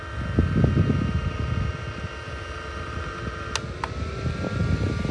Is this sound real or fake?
real